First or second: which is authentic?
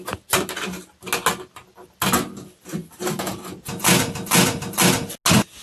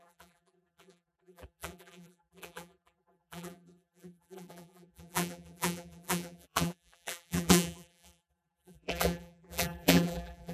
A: first